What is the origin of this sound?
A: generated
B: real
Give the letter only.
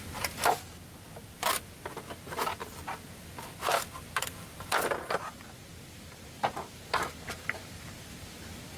B